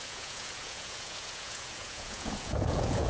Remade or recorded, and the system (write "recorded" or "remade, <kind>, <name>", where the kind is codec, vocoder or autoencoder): remade, vocoder, Vocos